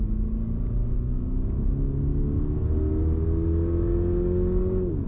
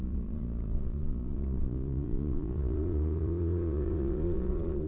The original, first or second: first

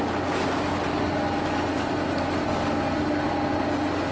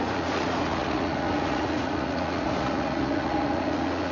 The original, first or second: first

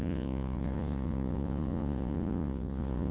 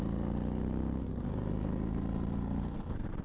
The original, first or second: second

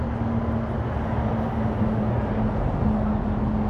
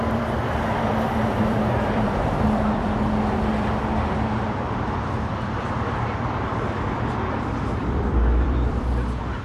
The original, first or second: first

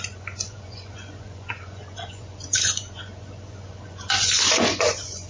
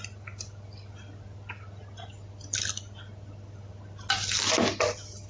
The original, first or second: second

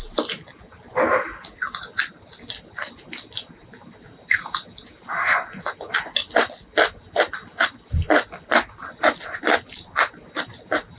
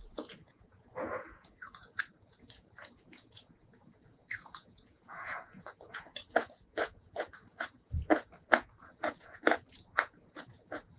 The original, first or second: first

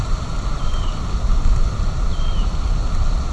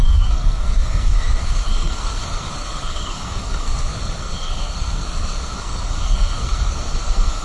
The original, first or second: first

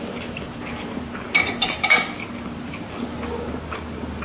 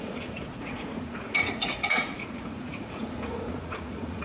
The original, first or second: first